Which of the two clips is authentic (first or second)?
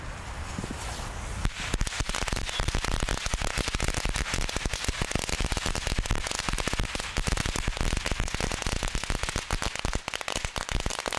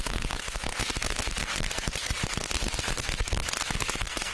first